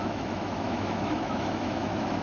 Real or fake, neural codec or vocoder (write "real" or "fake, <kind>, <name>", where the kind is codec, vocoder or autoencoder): fake, autoencoder, DAC-VAE